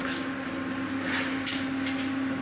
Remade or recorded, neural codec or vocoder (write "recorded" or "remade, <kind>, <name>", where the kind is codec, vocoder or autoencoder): recorded